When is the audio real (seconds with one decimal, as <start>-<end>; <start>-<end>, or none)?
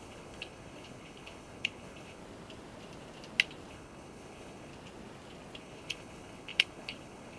2.2-3.7; 4.7-5.6